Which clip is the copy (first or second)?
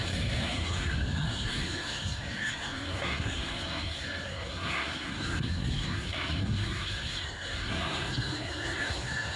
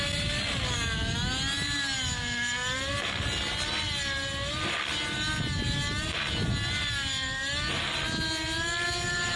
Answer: first